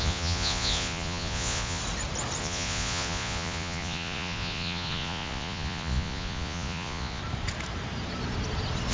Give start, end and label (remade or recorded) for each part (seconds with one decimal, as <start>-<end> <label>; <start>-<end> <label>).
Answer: 0.0-1.8 remade; 1.8-2.4 recorded; 2.4-7.2 remade; 7.2-8.9 recorded